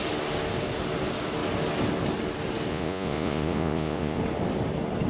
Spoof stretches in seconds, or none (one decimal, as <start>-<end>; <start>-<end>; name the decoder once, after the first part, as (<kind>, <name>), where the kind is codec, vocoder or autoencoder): 2.7-4.2 (vocoder, Vocos)